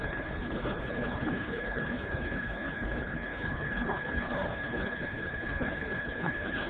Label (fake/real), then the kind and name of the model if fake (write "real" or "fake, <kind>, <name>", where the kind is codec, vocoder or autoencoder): fake, codec, HILCodec